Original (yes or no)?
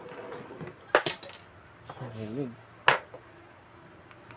yes